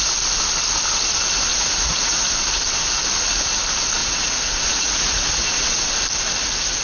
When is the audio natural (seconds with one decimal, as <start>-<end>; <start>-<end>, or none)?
0.0-1.5; 2.2-4.0; 5.9-6.8